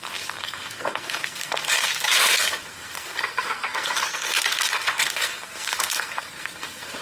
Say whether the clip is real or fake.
fake